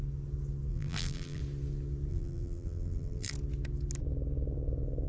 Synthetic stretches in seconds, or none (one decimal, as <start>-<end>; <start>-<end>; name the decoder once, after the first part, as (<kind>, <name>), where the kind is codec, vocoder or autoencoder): 0.7-1.4 (vocoder, BigVGAN v2); 2.1-3.3